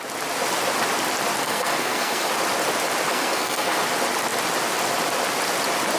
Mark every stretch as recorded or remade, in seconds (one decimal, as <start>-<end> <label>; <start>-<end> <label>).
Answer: 0.0-1.4 recorded; 1.4-2.3 remade; 2.3-3.1 recorded; 3.1-3.8 remade; 3.8-6.0 recorded